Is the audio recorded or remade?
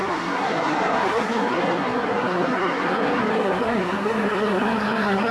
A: remade